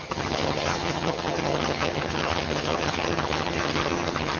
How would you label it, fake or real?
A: fake